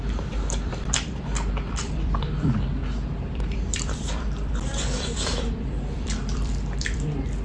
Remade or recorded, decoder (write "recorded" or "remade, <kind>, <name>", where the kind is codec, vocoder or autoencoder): remade, vocoder, BigVGAN v2